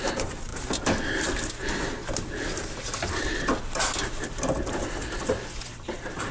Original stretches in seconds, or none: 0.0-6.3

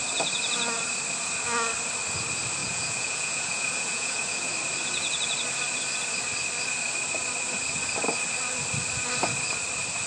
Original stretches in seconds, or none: 0.0-2.6; 4.5-10.1